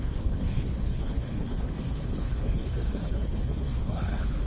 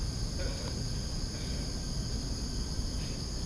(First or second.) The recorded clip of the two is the second